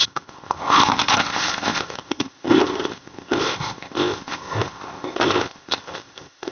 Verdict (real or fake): fake